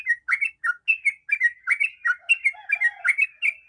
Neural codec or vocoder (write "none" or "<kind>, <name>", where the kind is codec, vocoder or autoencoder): none